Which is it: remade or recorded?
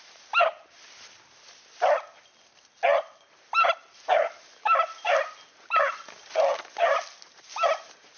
recorded